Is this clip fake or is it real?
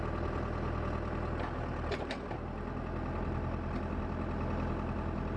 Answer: real